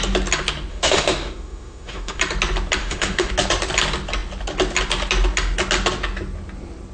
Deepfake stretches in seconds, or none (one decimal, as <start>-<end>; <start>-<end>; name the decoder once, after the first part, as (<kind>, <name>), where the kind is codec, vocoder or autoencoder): 0.7-2.2 (autoencoder, DAC-VAE); 2.8-3.3